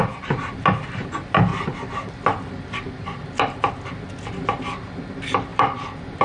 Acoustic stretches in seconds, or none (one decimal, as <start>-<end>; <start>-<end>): 0.0-6.2